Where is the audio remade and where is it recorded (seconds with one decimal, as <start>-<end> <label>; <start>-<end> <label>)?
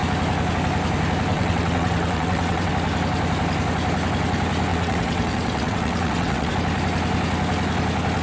0.0-1.3 recorded; 1.3-2.7 remade; 2.7-4.7 recorded; 4.7-6.5 remade; 6.5-8.2 recorded